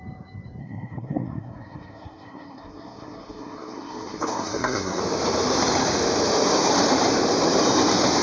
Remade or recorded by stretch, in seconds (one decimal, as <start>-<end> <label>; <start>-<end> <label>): 0.0-0.6 recorded; 0.6-5.0 remade; 5.0-8.2 recorded